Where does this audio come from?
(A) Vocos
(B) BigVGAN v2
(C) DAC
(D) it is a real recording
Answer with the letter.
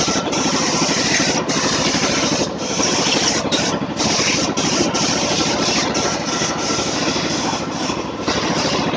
B